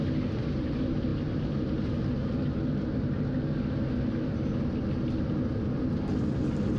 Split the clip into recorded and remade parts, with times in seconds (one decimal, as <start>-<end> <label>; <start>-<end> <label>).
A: 0.0-6.8 recorded